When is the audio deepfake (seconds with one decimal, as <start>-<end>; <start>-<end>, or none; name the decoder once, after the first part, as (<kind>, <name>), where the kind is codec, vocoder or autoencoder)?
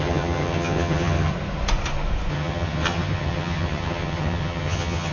0.0-1.3 (vocoder, HiFi-GAN); 2.3-5.1